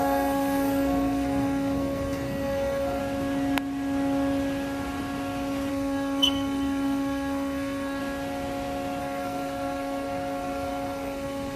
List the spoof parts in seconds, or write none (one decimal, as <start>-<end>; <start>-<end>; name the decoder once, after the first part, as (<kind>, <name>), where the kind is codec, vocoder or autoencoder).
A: 0.0-3.0 (codec, SNAC); 5.7-8.0; 9.0-11.6